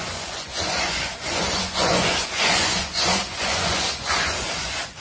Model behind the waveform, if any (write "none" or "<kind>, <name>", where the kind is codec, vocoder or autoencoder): vocoder, Vocos